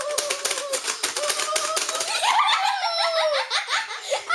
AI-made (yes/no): no